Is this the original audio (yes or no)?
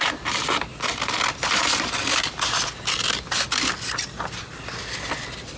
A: no